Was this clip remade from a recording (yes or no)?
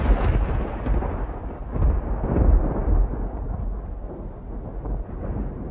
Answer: no